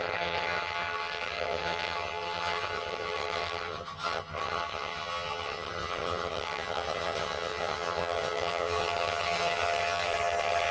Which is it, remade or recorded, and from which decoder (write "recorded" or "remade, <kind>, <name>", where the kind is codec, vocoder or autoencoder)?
remade, vocoder, HiFi-GAN